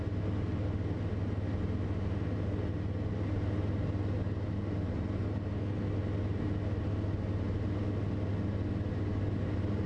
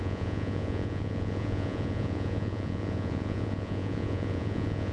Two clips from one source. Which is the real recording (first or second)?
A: first